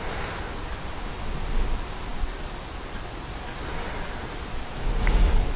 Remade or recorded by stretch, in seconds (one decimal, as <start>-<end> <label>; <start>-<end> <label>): 0.0-2.1 recorded; 2.1-3.3 remade; 3.3-5.6 recorded